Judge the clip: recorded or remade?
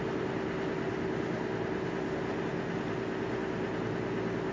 recorded